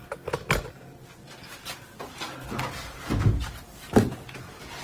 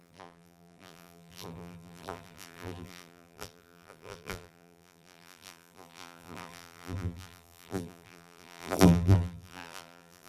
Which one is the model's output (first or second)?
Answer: second